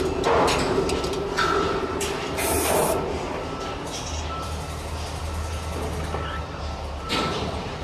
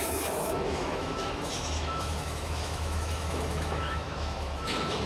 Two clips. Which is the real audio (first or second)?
first